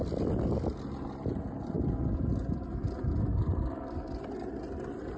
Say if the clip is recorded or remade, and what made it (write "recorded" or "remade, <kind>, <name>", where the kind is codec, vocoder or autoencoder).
recorded